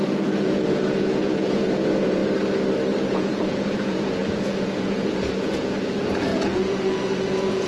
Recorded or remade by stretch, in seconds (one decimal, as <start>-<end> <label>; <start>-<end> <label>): 0.0-2.2 remade; 2.2-3.1 recorded; 3.1-7.7 remade